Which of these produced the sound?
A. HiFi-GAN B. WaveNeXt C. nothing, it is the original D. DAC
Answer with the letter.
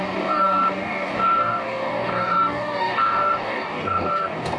D